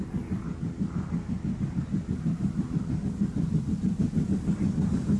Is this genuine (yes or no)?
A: yes